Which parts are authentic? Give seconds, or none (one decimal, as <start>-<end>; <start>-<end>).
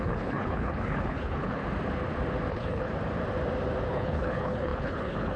1.6-2.5; 2.9-3.9